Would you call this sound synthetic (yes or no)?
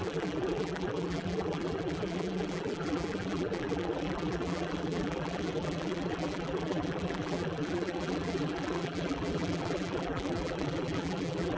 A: yes